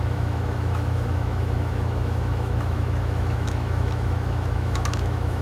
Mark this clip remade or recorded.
remade